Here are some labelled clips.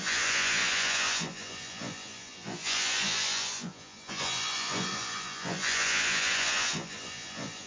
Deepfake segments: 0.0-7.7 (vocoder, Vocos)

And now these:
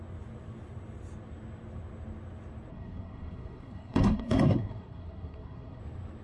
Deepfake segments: 2.7-5.8 (codec, SNAC)